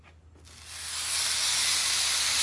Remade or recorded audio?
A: recorded